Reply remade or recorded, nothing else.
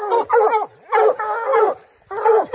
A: recorded